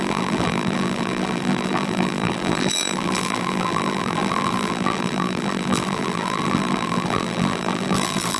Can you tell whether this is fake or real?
fake